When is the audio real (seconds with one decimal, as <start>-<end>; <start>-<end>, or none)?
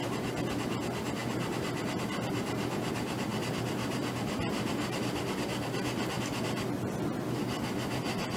0.0-8.4